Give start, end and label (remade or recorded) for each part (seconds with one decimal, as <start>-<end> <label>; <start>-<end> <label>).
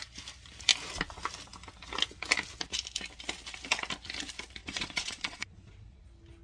0.0-4.6 recorded; 4.6-6.0 remade; 6.0-6.4 recorded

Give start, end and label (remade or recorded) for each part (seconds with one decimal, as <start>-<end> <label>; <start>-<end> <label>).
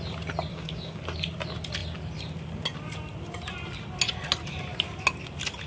0.0-0.5 recorded; 0.5-1.0 remade; 1.0-5.7 recorded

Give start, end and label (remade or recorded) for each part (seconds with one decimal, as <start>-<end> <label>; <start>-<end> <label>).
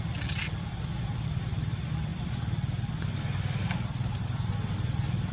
0.0-5.3 recorded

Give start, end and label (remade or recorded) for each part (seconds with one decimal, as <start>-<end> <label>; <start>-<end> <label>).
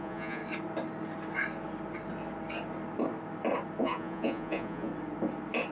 0.0-0.4 remade; 0.4-3.8 recorded; 3.8-4.9 remade; 4.9-5.7 recorded